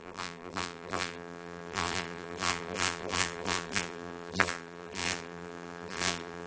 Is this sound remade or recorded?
remade